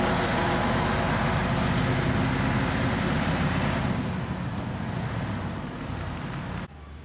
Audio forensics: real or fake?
real